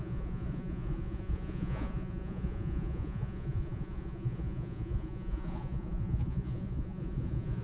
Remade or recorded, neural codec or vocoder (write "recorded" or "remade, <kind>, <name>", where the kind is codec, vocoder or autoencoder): remade, vocoder, Vocos